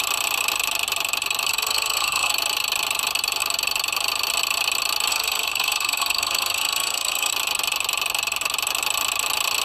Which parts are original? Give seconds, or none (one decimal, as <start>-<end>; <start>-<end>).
0.0-1.5; 2.3-5.1; 7.3-9.6